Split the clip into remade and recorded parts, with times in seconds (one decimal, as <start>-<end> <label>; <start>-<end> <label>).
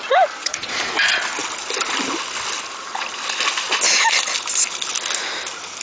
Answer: 0.0-0.4 recorded; 0.4-0.9 remade; 0.9-5.8 recorded